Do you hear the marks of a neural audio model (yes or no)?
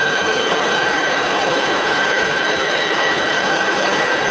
yes